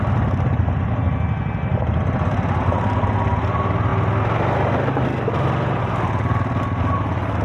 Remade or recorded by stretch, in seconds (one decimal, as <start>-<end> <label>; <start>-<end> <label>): 0.0-7.4 recorded

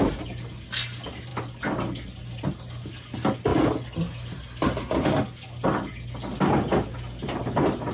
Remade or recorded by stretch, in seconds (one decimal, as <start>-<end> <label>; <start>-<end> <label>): 0.0-7.9 recorded

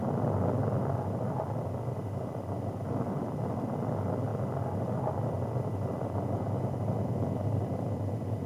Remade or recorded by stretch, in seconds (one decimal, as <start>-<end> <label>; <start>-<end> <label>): 0.0-8.5 recorded

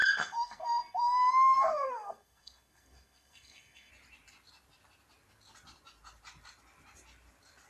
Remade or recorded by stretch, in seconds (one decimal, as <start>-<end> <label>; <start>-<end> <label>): 0.0-3.9 remade; 3.9-7.7 recorded